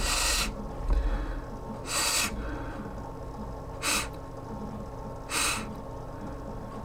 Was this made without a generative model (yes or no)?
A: yes